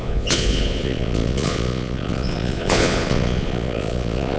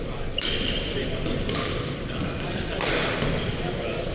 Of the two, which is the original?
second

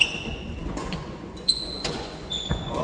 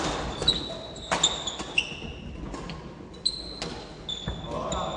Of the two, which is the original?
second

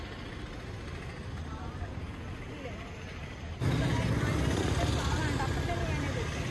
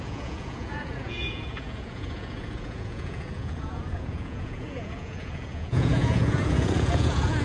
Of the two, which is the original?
first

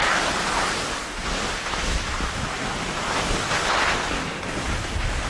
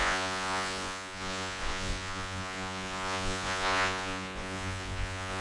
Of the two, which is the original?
first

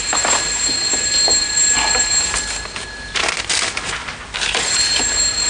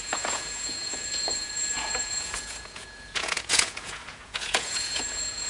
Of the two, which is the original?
first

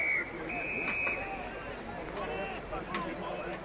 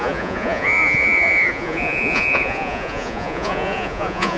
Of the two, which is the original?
first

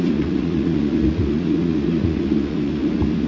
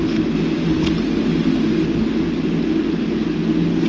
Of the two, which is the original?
second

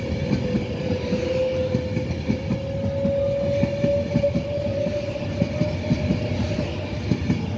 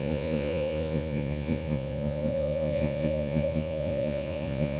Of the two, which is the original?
first